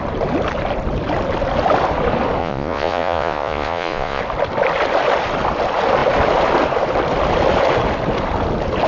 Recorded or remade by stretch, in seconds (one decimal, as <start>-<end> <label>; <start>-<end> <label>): 0.0-2.4 recorded; 2.4-4.2 remade; 4.2-8.9 recorded